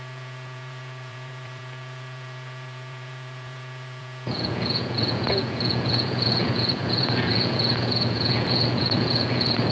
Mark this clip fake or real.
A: fake